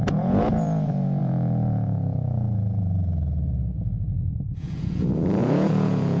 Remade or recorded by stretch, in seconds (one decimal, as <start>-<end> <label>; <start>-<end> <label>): 0.0-6.2 remade